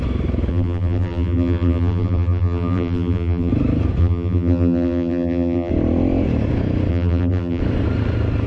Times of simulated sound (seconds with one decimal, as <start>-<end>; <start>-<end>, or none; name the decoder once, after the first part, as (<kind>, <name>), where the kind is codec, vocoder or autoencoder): 0.5-3.5 (vocoder, BigVGAN v2); 4.0-5.7; 6.9-7.6